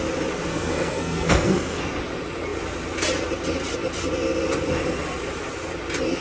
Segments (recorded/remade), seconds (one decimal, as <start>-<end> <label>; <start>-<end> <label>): 0.0-0.5 recorded; 0.5-1.8 remade; 1.8-6.2 recorded

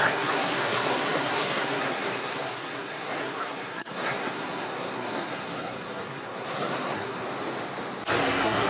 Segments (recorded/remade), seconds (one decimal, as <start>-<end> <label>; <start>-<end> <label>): 0.0-7.2 remade; 7.2-8.2 recorded; 8.2-8.7 remade

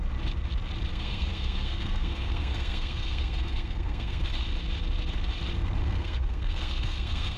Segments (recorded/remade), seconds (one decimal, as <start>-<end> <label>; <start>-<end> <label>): 0.0-0.9 recorded; 0.9-4.4 remade; 4.4-5.8 recorded; 5.8-7.4 remade

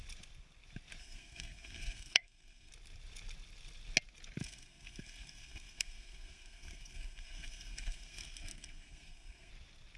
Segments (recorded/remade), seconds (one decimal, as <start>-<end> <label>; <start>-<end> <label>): 0.0-1.0 recorded; 1.0-2.7 remade; 2.7-4.4 recorded; 4.4-9.5 remade; 9.5-10.0 recorded

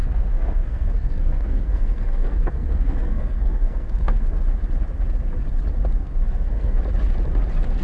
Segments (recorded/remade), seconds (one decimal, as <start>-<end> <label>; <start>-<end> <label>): 0.0-4.4 remade; 4.4-6.0 recorded; 6.0-6.8 remade; 6.8-7.8 recorded

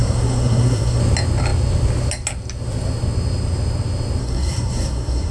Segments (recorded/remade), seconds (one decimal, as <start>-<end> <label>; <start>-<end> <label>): 0.0-1.0 remade; 1.0-4.2 recorded; 4.2-5.3 remade